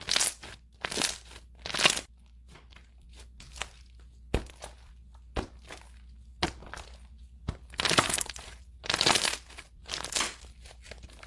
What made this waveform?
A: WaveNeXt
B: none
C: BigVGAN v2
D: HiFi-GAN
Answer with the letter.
B